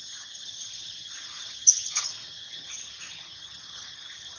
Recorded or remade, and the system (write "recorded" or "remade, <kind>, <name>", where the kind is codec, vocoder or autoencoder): remade, vocoder, HiFi-GAN